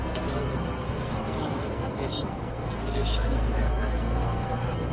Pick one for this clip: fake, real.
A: fake